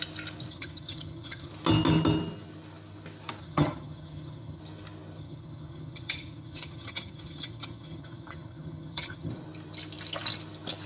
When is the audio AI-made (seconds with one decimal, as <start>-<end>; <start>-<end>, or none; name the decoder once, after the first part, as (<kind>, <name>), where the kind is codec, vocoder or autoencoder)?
0.5-1.5 (vocoder, HiFi-GAN); 3.4-4.6; 5.2-9.3